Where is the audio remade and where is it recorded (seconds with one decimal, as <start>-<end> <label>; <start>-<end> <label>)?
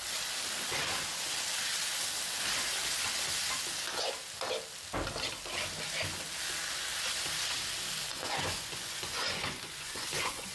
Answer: 0.0-8.1 recorded; 8.1-10.5 remade